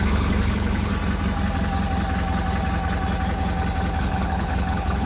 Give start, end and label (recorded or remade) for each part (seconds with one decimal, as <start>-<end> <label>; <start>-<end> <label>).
0.0-0.9 remade; 0.9-4.0 recorded; 4.0-5.1 remade

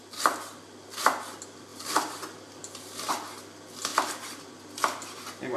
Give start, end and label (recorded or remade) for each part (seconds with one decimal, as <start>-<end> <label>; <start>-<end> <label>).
0.0-1.7 recorded; 1.7-3.1 remade; 3.1-3.9 recorded; 3.9-4.5 remade; 4.5-5.6 recorded

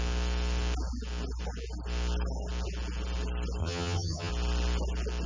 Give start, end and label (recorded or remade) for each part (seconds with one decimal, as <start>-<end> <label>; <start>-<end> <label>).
0.0-3.6 recorded; 3.6-4.3 remade; 4.3-5.3 recorded

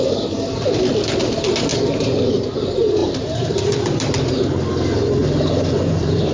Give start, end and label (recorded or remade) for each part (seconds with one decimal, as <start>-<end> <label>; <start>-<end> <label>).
0.0-1.7 recorded; 1.7-2.4 remade; 2.4-3.0 recorded; 3.0-3.5 remade; 3.5-5.2 recorded; 5.2-6.3 remade

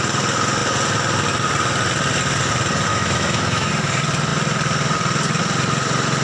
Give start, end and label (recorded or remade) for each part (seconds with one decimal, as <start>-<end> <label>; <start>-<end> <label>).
0.0-2.9 recorded; 2.9-3.7 remade; 3.7-6.2 recorded

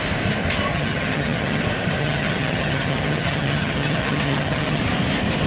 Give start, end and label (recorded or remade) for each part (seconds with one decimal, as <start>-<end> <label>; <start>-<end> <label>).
0.0-0.7 recorded; 0.7-1.6 remade; 1.6-2.0 recorded; 2.0-4.8 remade; 4.8-5.5 recorded

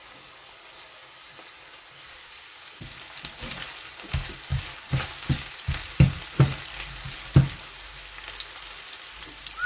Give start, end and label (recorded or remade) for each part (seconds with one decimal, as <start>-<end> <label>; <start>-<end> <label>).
0.0-9.7 recorded

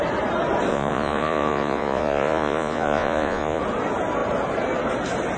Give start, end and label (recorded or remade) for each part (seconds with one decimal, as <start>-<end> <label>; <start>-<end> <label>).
0.0-0.7 recorded; 0.7-3.6 remade; 3.6-5.4 recorded